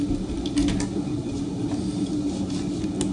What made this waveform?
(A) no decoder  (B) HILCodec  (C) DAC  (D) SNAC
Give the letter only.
A